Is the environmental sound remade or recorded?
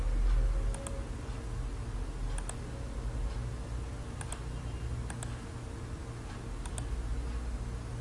recorded